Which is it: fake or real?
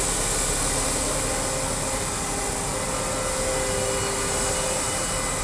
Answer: real